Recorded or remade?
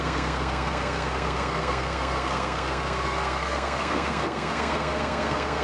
remade